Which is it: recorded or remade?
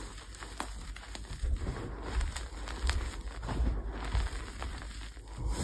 recorded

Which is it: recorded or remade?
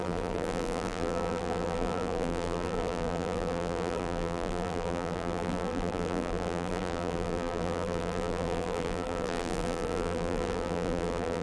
remade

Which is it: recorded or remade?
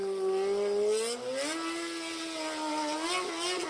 recorded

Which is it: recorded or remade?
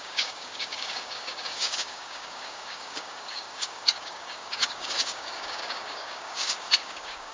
remade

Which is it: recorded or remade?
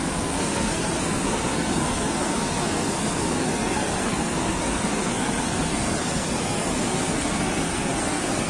remade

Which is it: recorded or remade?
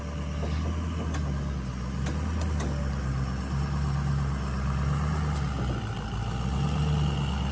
recorded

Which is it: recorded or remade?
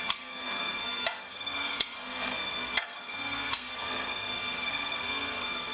remade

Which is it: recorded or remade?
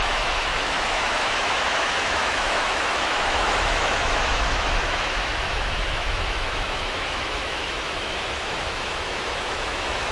remade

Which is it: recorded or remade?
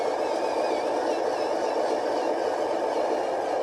recorded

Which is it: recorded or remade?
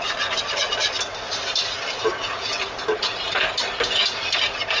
recorded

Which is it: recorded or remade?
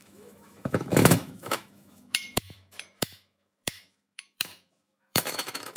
remade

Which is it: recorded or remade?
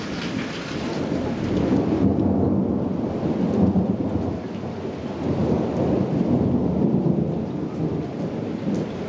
recorded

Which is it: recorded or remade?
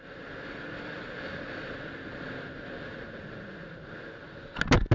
recorded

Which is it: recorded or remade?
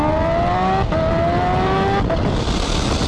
recorded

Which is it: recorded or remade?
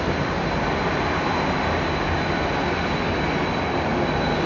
recorded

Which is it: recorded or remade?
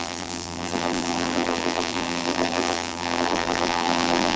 remade